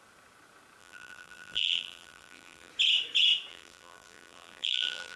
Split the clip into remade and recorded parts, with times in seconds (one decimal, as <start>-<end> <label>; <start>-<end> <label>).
0.0-0.8 recorded; 0.8-2.7 remade; 2.7-3.5 recorded; 3.5-5.2 remade